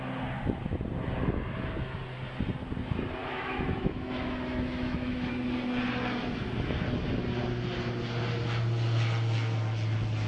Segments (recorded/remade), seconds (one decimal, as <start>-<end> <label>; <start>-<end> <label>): 0.0-3.2 recorded; 3.2-5.3 remade; 5.3-10.3 recorded